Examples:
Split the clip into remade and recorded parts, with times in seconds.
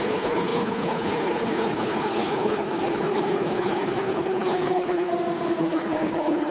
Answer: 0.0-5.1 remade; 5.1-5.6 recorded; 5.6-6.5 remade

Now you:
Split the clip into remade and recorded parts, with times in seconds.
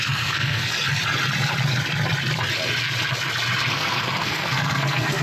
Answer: 0.0-0.6 remade; 0.6-3.7 recorded; 3.7-5.2 remade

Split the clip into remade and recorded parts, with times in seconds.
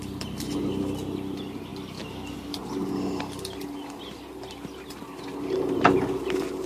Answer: 0.0-1.7 remade; 1.7-2.6 recorded; 2.6-6.7 remade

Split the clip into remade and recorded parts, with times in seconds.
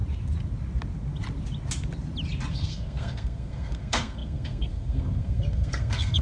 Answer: 0.0-2.5 recorded; 2.5-6.2 remade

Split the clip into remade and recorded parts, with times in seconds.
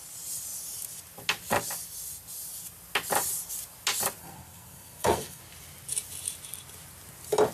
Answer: 0.0-4.2 recorded; 4.2-5.4 remade; 5.4-7.5 recorded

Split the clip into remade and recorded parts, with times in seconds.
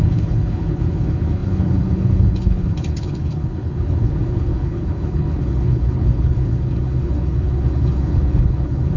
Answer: 0.0-9.0 remade